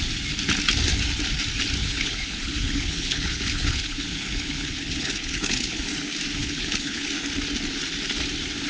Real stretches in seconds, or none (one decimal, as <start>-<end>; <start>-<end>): 0.0-1.8; 5.8-6.4; 7.1-8.7